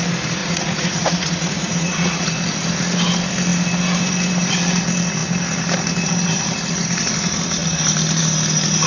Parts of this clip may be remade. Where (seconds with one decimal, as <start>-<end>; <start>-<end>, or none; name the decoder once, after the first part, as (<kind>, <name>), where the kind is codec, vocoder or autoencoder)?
0.4-2.3 (vocoder, Vocos)